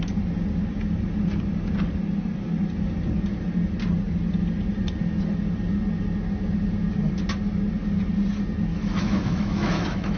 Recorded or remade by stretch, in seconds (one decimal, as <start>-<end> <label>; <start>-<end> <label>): 0.0-8.7 recorded; 8.7-10.2 remade